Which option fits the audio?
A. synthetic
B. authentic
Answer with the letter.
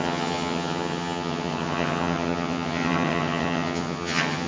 A